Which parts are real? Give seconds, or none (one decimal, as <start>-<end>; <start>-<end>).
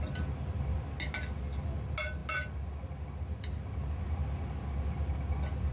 0.0-5.7